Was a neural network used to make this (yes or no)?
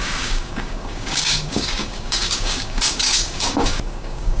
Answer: yes